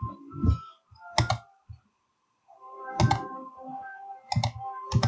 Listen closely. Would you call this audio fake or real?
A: real